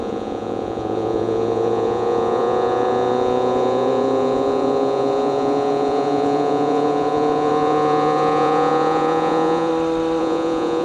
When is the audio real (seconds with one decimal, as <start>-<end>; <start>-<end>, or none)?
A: 9.7-10.2